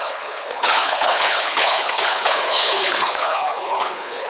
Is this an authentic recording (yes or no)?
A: no